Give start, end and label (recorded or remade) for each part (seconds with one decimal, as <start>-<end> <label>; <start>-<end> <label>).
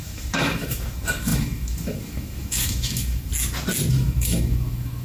0.0-3.3 remade; 3.3-3.9 recorded; 3.9-5.0 remade